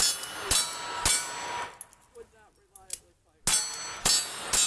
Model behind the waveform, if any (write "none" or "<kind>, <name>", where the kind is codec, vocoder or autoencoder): none